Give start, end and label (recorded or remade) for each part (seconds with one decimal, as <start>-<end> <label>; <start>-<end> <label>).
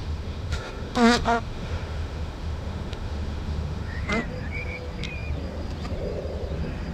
0.0-4.1 remade; 4.1-6.9 recorded